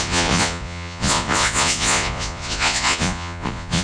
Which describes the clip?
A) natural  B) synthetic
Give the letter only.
B